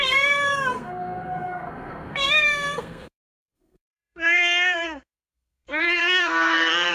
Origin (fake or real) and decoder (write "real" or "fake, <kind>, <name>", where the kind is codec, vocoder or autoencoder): fake, codec, SNAC